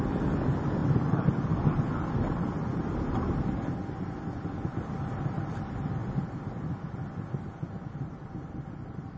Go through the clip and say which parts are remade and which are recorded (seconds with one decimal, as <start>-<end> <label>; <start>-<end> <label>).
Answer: 0.0-9.2 recorded